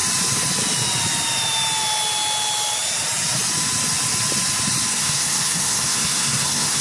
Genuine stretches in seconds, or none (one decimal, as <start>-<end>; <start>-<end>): 0.0-4.9